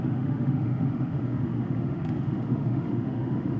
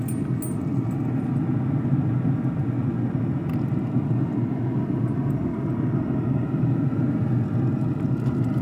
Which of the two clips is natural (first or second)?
second